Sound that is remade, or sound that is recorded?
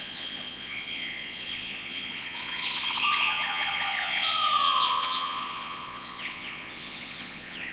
remade